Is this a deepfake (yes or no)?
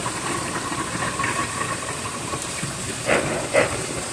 yes